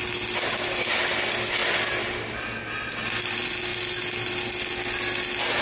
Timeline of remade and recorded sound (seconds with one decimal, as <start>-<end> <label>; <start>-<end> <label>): 0.0-5.6 recorded

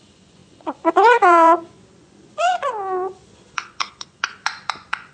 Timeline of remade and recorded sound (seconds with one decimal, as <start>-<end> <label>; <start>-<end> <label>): 0.0-5.1 remade

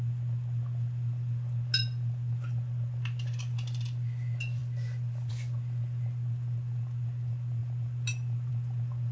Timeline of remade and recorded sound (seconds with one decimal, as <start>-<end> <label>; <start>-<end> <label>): 0.0-9.1 recorded

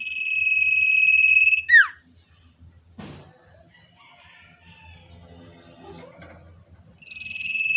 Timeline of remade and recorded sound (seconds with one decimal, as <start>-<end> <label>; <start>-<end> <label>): 0.0-7.8 recorded

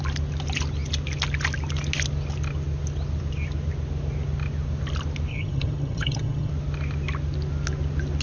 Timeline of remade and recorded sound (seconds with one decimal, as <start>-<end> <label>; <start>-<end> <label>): 0.0-5.3 recorded; 5.3-6.5 remade; 6.5-8.2 recorded

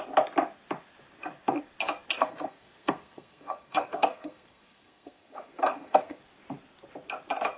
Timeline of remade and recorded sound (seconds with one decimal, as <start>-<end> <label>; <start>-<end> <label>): 0.0-2.2 recorded; 2.2-6.2 remade; 6.2-7.6 recorded

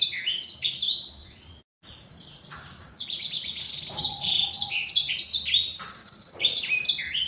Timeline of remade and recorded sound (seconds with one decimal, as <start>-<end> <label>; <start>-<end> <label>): 0.0-1.2 recorded; 1.2-5.1 remade; 5.1-6.0 recorded; 6.0-6.6 remade; 6.6-7.3 recorded

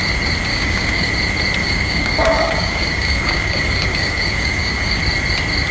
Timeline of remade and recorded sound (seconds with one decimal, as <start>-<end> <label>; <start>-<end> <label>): 0.0-0.5 recorded; 0.5-1.1 remade; 1.1-1.6 recorded; 1.6-5.0 remade; 5.0-5.7 recorded